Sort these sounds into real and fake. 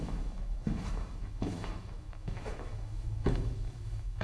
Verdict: fake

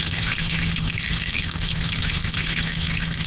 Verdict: fake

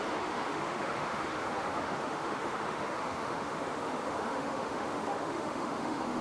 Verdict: fake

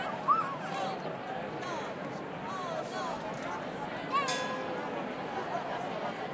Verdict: real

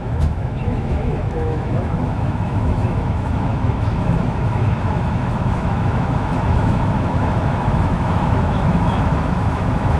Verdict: fake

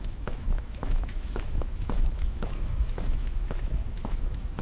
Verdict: fake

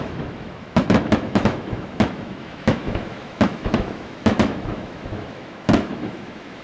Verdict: fake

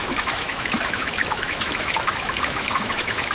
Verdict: fake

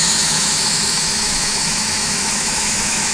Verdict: fake